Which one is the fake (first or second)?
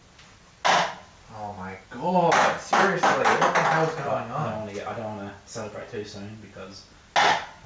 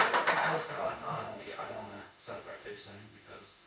second